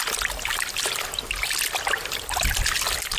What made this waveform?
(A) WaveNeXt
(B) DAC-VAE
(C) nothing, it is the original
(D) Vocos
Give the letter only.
C